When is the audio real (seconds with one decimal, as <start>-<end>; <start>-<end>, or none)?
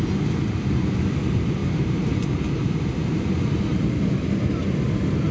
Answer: 0.0-1.6; 3.6-5.3